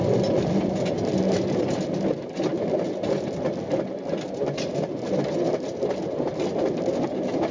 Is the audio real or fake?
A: real